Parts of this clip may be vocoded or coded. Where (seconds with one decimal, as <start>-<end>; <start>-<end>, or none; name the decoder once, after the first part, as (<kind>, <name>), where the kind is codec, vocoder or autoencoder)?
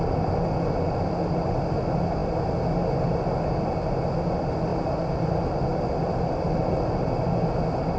none